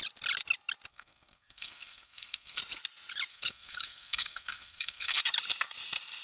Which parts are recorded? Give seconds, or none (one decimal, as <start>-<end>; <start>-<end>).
0.0-0.9; 2.6-3.3; 5.2-6.2